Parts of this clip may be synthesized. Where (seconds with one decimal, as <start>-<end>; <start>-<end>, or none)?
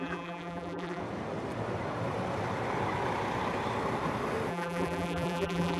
0.0-1.0; 4.5-5.8